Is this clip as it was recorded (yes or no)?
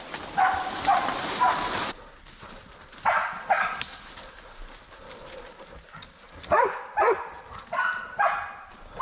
yes